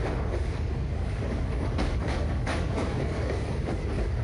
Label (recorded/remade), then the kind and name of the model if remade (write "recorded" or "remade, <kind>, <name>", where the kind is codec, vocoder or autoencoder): remade, codec, DAC